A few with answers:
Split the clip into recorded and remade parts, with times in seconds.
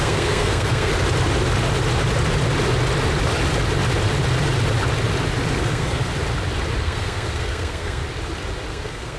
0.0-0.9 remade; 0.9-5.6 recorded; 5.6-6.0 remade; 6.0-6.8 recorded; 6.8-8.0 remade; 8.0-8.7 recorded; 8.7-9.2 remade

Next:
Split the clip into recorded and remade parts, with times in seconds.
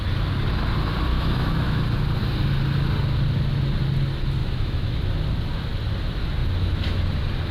0.0-1.1 recorded; 1.1-1.8 remade; 1.8-4.4 recorded; 4.4-5.0 remade; 5.0-7.5 recorded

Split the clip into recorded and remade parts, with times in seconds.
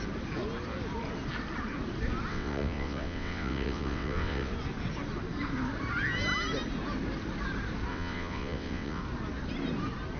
0.0-2.3 recorded; 2.3-4.5 remade; 4.5-7.9 recorded; 7.9-9.0 remade; 9.0-10.2 recorded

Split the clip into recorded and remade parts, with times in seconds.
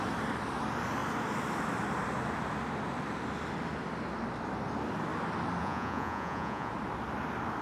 0.0-5.6 recorded; 5.6-6.7 remade; 6.7-7.6 recorded